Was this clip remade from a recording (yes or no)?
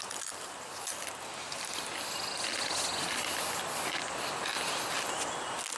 no